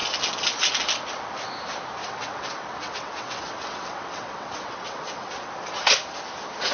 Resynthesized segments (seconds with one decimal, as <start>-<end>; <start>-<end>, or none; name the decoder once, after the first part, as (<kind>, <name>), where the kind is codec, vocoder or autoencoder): 2.0-5.5 (vocoder, WaveNeXt)